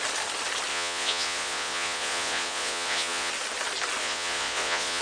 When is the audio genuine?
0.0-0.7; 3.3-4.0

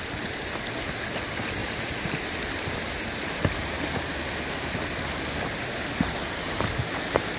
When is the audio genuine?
0.0-1.6; 2.1-7.4

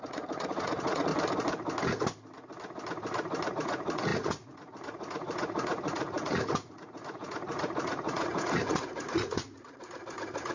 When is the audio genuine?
1.1-3.5

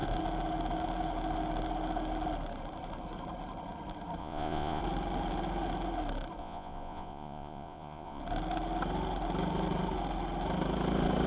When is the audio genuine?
0.0-4.2; 4.8-6.4; 8.2-11.3